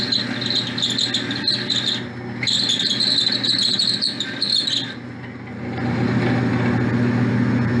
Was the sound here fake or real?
real